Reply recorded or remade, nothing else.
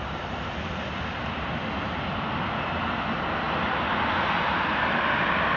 recorded